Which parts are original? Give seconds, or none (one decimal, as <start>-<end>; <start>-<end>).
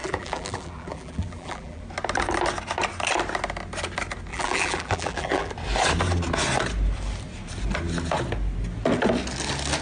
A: 1.8-4.3; 5.5-9.8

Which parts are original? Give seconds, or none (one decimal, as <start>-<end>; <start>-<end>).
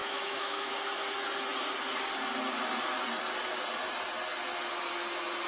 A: 0.7-5.5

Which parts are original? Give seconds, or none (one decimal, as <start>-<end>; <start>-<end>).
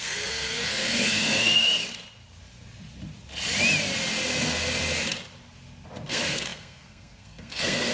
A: 1.8-6.1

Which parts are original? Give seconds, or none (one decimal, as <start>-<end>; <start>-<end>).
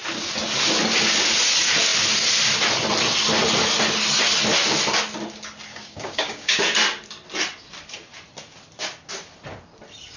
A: 0.0-5.7; 6.6-10.2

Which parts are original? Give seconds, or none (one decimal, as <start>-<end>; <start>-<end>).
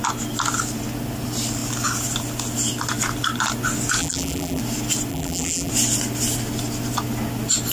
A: 0.0-4.0; 4.6-5.1; 5.7-7.7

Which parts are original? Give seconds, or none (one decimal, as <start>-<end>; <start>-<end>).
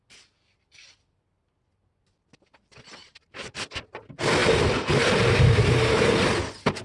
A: 0.0-3.0; 3.8-4.4; 6.2-6.8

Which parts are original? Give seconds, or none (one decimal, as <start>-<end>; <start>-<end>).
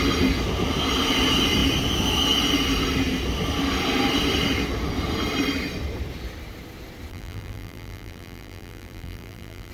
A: 0.0-7.1